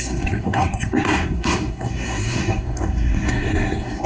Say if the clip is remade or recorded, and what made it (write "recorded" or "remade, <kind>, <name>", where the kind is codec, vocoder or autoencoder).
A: remade, codec, SNAC